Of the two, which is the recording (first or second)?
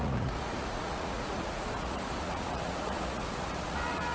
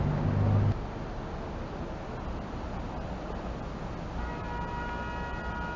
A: second